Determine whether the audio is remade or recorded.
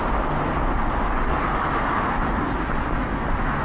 recorded